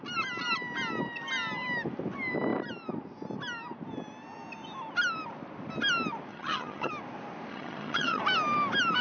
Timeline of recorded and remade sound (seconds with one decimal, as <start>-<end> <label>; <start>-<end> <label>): 0.0-6.3 recorded; 6.3-6.9 remade; 6.9-7.5 recorded; 7.5-8.2 remade; 8.2-9.0 recorded